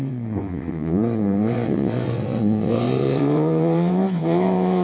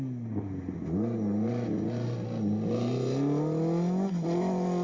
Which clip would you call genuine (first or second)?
second